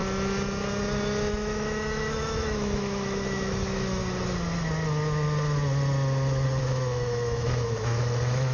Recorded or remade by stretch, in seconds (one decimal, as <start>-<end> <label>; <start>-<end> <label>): 0.0-1.3 recorded; 1.3-4.0 remade; 4.0-6.6 recorded; 6.6-8.5 remade